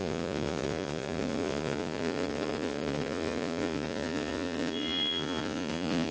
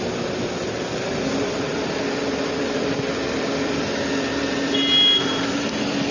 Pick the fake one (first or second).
first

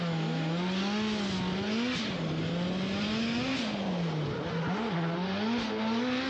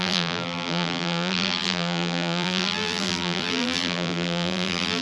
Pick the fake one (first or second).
second